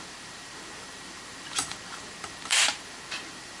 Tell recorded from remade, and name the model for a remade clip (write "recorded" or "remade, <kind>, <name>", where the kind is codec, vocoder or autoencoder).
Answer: remade, vocoder, BigVGAN v2